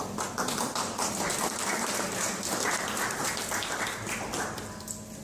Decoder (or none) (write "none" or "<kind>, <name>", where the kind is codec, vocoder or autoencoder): none